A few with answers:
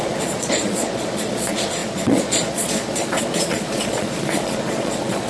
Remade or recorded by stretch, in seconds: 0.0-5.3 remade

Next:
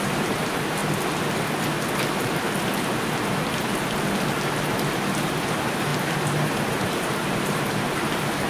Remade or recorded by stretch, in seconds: 0.0-0.8 remade; 0.8-5.4 recorded; 5.4-8.5 remade

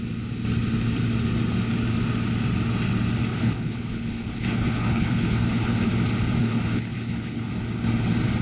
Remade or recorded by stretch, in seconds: 0.0-3.3 recorded; 3.3-5.9 remade; 5.9-6.4 recorded; 6.4-7.5 remade; 7.5-8.4 recorded

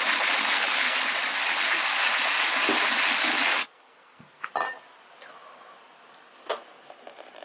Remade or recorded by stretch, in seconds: 0.0-0.5 recorded; 0.5-1.0 remade; 1.0-3.6 recorded; 3.6-4.5 remade; 4.5-7.4 recorded

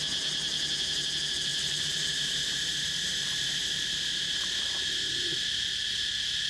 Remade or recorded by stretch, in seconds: 0.0-1.5 recorded; 1.5-5.4 remade; 5.4-6.5 recorded

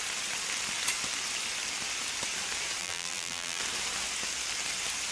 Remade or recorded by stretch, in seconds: 0.0-2.8 recorded; 2.8-3.6 remade; 3.6-5.1 recorded

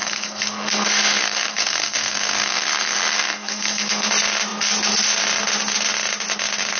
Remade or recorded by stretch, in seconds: 0.0-4.1 remade; 4.1-6.8 recorded